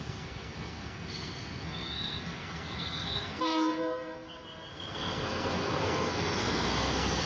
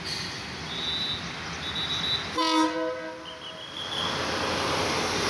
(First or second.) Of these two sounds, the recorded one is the second